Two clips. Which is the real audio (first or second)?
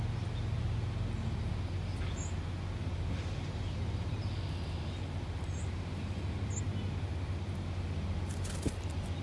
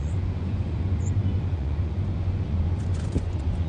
first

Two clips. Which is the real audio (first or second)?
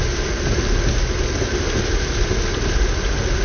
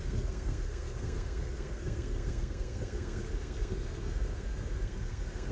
first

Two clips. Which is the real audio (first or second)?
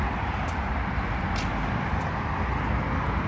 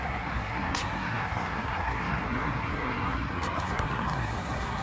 first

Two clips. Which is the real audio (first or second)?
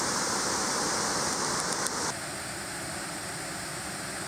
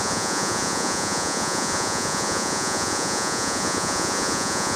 first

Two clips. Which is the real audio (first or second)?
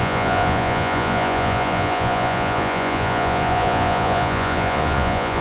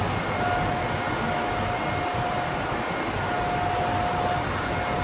second